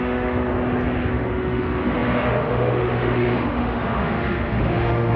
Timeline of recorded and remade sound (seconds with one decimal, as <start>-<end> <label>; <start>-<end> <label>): 0.0-0.5 remade; 0.5-1.1 recorded; 1.1-5.2 remade